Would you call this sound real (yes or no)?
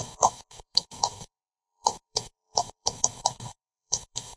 no